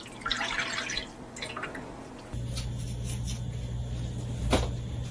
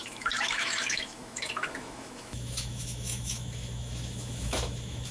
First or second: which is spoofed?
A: second